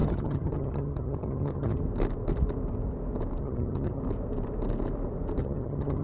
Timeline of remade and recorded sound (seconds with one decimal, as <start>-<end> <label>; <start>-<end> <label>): 0.0-1.8 remade; 1.8-3.4 recorded; 3.4-4.0 remade; 4.0-5.4 recorded; 5.4-6.0 remade